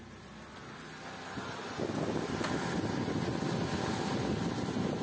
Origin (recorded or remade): recorded